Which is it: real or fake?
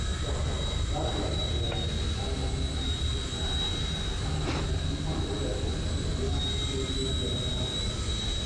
real